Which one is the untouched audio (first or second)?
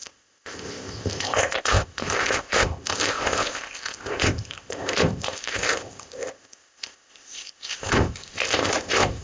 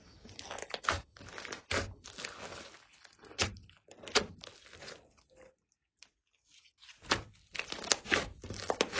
second